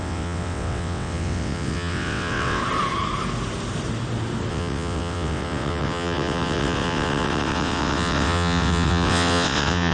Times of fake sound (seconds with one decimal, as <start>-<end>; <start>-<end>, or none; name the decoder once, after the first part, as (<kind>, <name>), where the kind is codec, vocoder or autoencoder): 0.0-2.6 (vocoder, WaveNeXt); 4.5-9.9